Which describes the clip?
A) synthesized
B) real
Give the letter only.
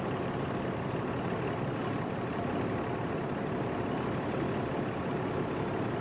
B